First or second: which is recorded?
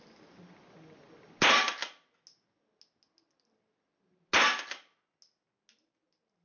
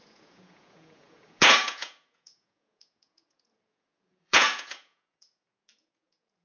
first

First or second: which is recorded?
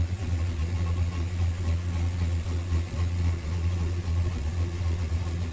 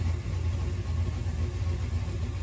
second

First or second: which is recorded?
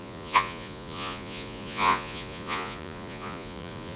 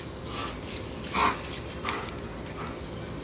second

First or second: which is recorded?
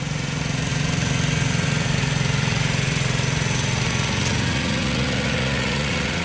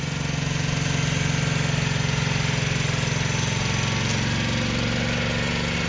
second